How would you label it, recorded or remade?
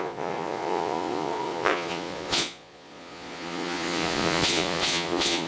remade